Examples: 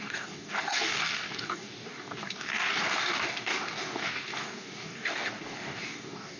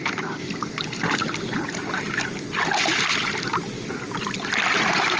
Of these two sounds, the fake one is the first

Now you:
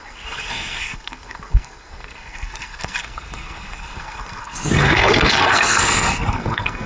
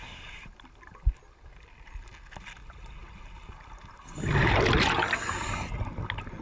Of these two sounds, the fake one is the first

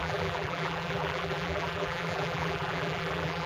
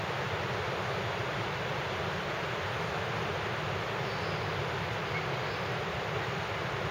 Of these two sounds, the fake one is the first